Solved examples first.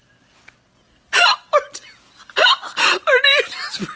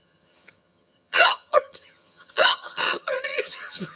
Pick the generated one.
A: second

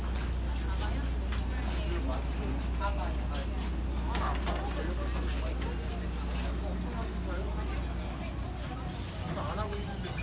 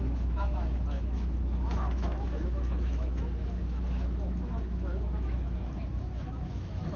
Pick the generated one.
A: second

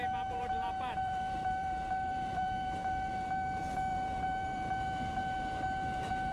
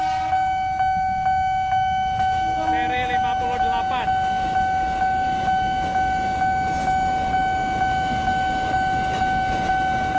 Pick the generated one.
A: first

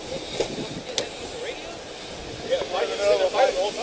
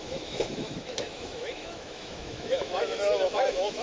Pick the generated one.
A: second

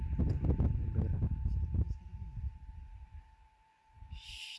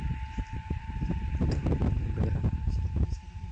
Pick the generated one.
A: second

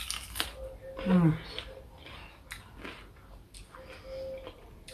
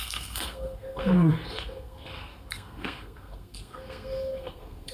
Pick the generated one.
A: second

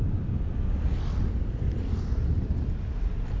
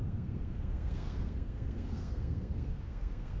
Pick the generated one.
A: second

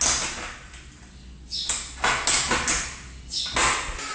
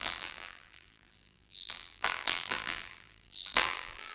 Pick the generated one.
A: second